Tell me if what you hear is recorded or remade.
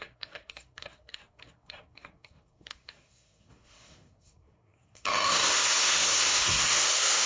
remade